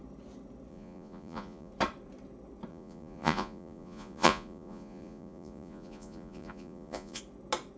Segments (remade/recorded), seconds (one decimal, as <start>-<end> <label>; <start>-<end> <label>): 0.0-0.7 recorded; 0.7-1.7 remade; 1.7-2.7 recorded; 2.7-7.2 remade; 7.2-7.8 recorded